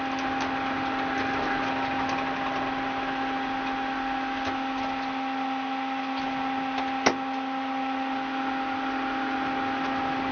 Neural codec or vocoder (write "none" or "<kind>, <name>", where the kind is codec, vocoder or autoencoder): none